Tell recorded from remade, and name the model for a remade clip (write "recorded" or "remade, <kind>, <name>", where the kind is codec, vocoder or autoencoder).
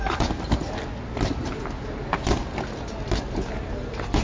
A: recorded